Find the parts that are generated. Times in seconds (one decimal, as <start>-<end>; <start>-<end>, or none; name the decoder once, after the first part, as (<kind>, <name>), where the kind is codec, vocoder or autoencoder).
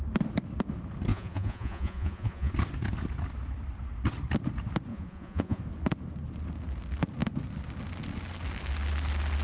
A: 1.1-2.5 (vocoder, Vocos); 4.9-5.6